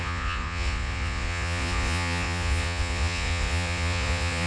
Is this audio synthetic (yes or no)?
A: yes